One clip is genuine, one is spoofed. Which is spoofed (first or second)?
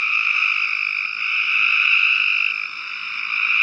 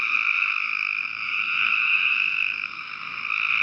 second